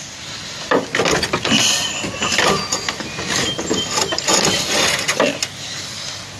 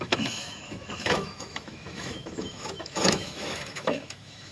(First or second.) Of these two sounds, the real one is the first